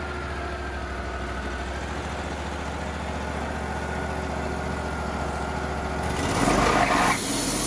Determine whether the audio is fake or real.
real